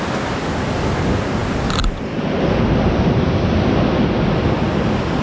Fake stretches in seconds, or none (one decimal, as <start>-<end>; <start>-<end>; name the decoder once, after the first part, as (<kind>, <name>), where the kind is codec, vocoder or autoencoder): none